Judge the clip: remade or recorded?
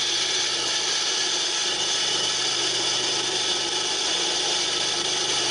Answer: remade